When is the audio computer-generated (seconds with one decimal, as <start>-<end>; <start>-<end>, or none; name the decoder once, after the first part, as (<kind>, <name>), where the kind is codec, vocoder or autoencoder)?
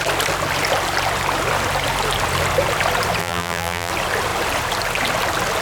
3.2-3.9 (vocoder, BigVGAN v2)